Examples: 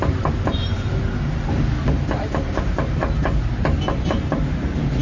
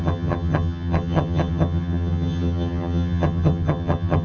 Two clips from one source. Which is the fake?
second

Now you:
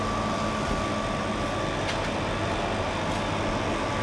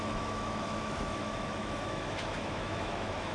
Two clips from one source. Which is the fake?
second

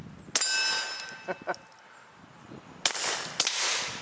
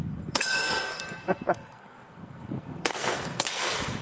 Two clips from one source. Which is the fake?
second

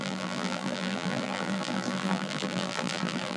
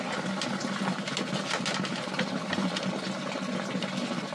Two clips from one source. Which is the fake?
first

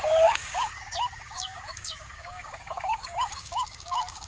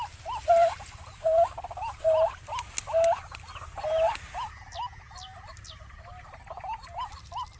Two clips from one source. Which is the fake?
first